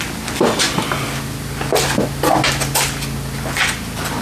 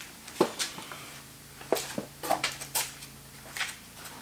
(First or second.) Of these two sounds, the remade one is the second